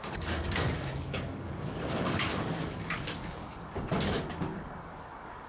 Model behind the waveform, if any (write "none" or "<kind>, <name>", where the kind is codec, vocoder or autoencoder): codec, DAC